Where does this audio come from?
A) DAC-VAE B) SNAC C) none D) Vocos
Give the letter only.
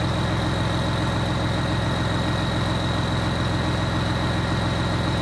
C